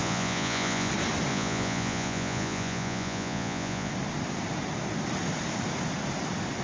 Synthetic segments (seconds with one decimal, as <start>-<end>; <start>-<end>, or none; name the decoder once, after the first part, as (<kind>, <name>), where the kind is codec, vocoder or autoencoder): 0.0-0.9 (vocoder, Vocos); 1.3-3.9